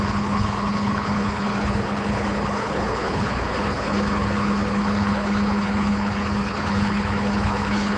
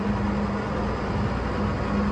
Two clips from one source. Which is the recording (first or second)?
second